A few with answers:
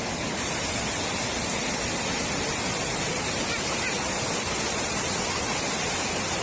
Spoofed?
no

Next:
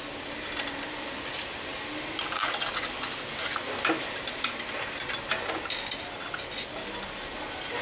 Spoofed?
no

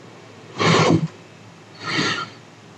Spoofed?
no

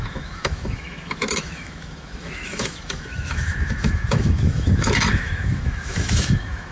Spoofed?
yes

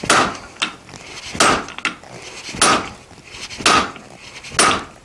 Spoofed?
no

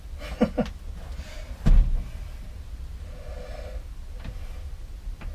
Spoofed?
no